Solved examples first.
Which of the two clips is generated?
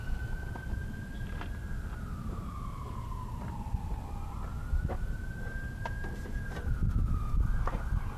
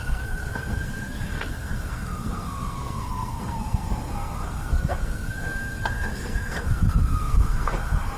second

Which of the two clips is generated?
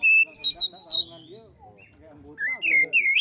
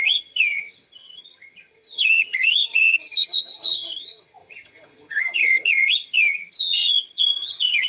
second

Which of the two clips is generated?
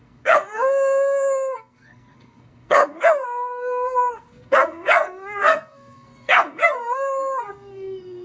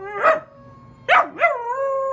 first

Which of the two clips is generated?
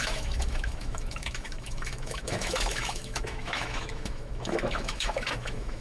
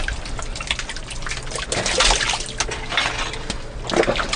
first